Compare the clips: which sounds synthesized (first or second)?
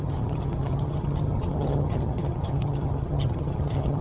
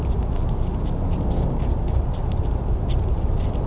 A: first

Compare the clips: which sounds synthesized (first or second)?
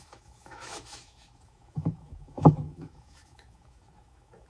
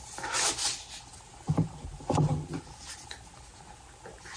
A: first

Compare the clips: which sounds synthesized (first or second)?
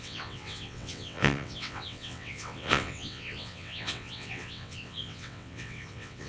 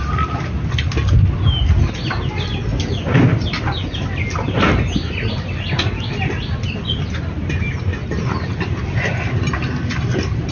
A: first